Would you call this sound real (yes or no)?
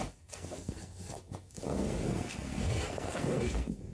no